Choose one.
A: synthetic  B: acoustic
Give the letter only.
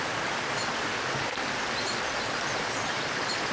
B